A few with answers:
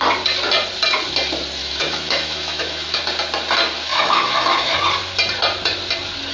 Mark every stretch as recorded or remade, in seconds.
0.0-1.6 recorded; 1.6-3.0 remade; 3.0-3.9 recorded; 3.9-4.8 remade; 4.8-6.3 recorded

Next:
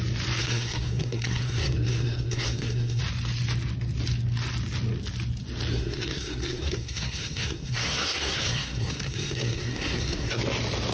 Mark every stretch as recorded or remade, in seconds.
0.0-0.4 recorded; 0.4-3.0 remade; 3.0-5.7 recorded; 5.7-10.4 remade; 10.4-10.9 recorded